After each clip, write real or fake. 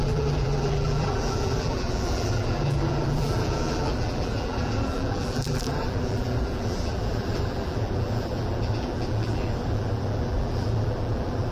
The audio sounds fake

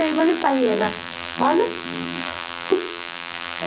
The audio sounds fake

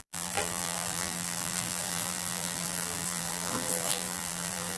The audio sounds fake